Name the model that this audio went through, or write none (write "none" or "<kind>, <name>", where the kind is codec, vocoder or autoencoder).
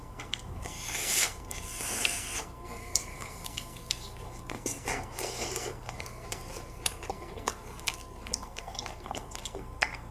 codec, SNAC